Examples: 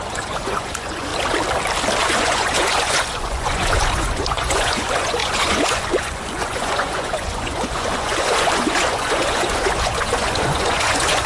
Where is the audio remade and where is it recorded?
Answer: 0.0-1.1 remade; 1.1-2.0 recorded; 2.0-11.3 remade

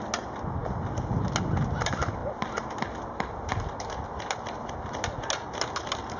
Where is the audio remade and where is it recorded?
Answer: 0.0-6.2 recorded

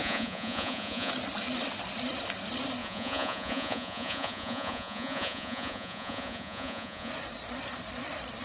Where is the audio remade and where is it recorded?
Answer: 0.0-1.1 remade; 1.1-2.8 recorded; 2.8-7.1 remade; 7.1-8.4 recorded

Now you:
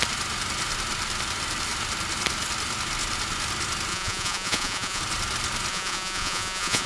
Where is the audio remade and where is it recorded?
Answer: 0.0-3.9 recorded; 3.9-5.0 remade; 5.0-5.7 recorded; 5.7-6.9 remade

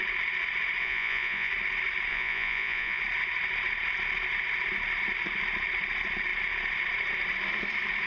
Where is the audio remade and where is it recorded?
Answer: 0.0-0.8 recorded; 0.8-1.5 remade; 1.5-2.1 recorded; 2.1-3.0 remade; 3.0-8.1 recorded

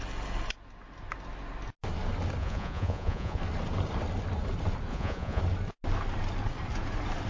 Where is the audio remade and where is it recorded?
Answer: 0.0-2.4 recorded; 2.4-3.4 remade; 3.4-4.9 recorded; 4.9-5.4 remade; 5.4-7.3 recorded

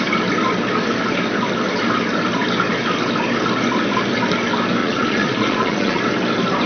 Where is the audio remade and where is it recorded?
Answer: 0.0-4.8 recorded; 4.8-6.0 remade; 6.0-6.7 recorded

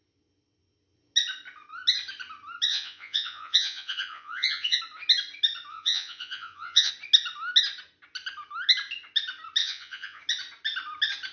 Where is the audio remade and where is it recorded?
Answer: 0.0-2.7 recorded; 2.7-4.8 remade; 4.8-5.7 recorded; 5.7-6.9 remade; 6.9-9.6 recorded; 9.6-10.2 remade; 10.2-11.3 recorded